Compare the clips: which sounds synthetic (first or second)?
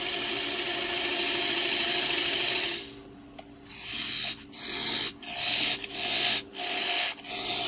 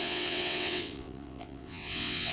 second